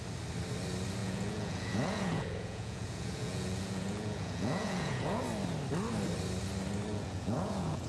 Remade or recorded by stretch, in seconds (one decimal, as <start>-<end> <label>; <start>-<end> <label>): 0.0-1.0 recorded; 1.0-5.2 remade; 5.2-6.9 recorded; 6.9-7.9 remade